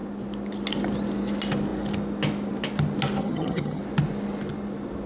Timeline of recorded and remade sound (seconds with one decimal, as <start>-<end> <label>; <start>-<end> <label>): 0.0-3.2 recorded; 3.2-3.8 remade; 3.8-5.1 recorded